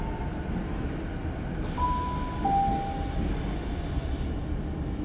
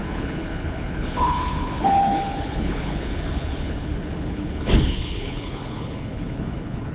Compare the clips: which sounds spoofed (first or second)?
second